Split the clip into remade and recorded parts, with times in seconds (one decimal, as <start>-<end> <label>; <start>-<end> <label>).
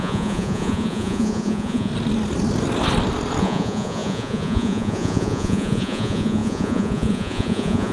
0.0-1.9 remade; 1.9-3.4 recorded; 3.4-7.9 remade